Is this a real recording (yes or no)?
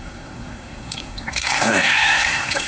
no